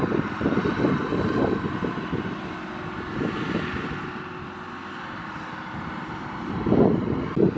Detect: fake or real real